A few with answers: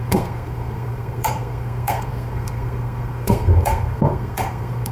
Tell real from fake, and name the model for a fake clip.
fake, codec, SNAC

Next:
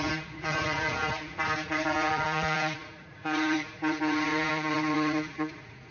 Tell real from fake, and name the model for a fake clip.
fake, vocoder, Vocos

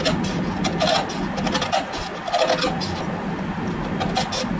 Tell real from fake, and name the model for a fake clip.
real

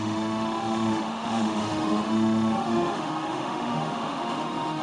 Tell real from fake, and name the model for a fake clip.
fake, autoencoder, DAC-VAE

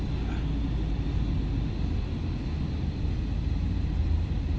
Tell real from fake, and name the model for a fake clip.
real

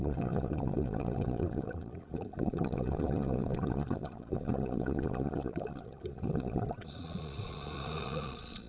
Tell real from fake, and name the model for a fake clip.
fake, vocoder, Vocos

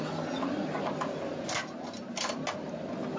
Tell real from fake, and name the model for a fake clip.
real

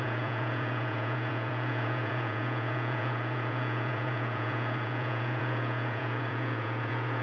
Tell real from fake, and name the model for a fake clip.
fake, vocoder, Vocos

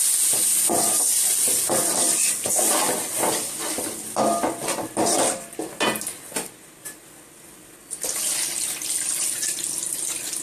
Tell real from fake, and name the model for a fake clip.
real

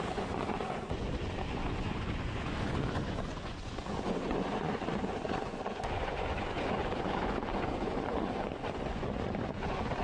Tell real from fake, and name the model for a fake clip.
fake, vocoder, Vocos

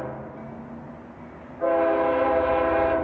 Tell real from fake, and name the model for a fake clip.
real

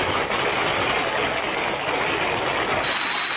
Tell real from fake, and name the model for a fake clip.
real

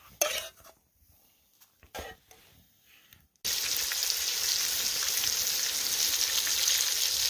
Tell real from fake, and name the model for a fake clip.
real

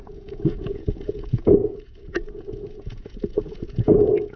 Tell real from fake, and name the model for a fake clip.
fake, vocoder, Vocos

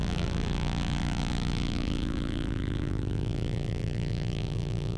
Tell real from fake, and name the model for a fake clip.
fake, vocoder, BigVGAN v2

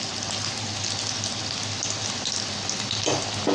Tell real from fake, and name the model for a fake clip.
real